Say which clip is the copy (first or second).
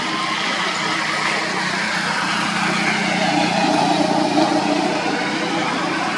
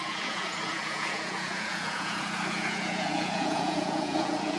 second